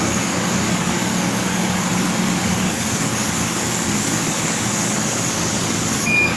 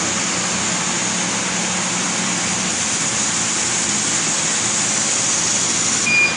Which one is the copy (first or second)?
first